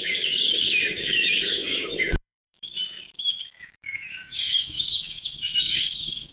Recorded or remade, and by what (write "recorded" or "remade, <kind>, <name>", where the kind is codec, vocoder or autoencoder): remade, autoencoder, DAC-VAE